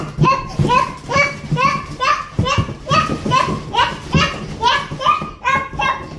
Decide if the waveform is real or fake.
real